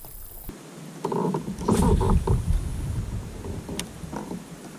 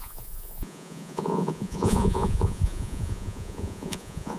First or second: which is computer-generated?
second